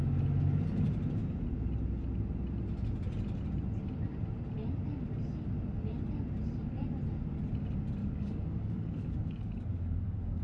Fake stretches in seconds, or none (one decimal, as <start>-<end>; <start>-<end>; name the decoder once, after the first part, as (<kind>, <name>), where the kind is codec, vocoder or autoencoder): 8.0-10.4 (codec, DAC)